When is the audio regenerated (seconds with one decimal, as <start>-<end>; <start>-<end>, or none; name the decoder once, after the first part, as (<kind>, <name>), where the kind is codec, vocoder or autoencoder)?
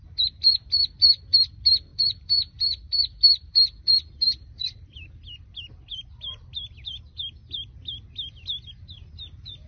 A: 1.9-7.0 (vocoder, BigVGAN v2)